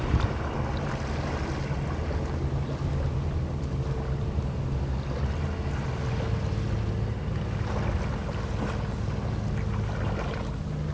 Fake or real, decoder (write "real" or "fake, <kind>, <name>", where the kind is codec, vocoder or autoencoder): real